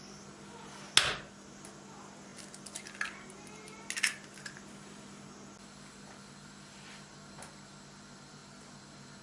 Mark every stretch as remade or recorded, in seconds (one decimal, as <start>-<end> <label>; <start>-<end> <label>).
0.0-9.2 recorded